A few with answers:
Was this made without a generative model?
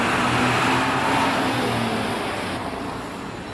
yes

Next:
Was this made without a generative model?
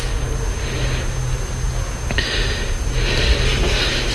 yes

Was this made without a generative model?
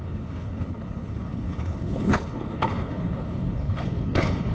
no